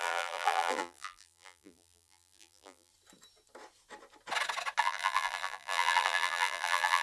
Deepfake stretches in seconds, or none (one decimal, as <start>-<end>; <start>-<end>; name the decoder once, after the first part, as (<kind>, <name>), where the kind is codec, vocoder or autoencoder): 0.0-2.9 (vocoder, BigVGAN v2); 4.8-7.0